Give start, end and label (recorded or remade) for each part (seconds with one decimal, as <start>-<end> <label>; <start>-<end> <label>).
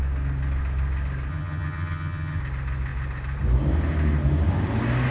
0.0-1.3 recorded; 1.3-2.4 remade; 2.4-5.1 recorded